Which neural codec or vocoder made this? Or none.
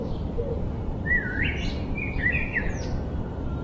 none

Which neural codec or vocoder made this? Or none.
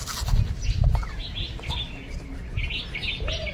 none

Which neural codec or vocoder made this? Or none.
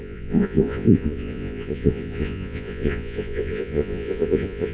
vocoder, Vocos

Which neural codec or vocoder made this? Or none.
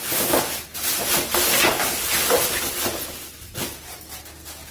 none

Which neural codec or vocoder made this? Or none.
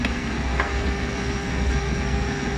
codec, SNAC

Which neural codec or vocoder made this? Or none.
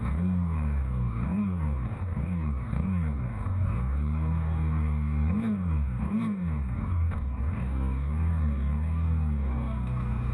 codec, DAC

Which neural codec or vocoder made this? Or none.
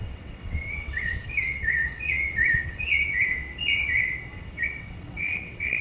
vocoder, WaveNeXt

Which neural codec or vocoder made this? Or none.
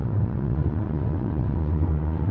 vocoder, WaveNeXt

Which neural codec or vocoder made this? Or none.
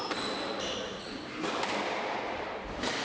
none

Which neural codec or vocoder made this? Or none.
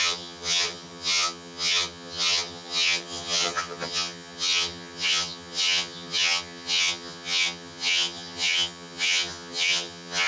vocoder, HiFi-GAN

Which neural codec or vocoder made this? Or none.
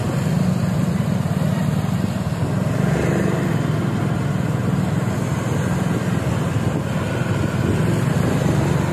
none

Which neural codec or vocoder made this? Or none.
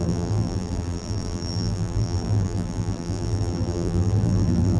vocoder, BigVGAN v2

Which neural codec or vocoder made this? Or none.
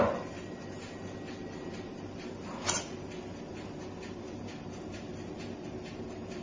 none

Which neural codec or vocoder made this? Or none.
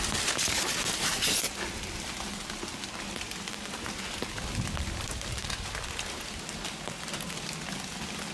none